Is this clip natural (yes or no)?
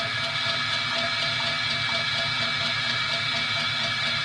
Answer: yes